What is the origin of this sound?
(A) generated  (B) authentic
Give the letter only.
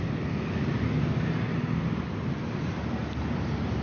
B